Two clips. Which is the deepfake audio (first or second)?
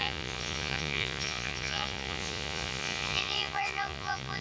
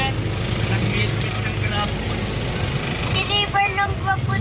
first